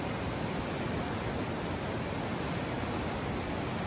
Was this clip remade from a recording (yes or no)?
no